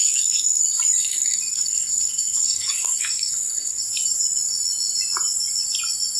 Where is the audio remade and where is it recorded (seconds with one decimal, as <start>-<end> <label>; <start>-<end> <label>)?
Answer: 0.0-0.6 remade; 0.6-1.0 recorded; 1.0-3.8 remade; 3.8-6.2 recorded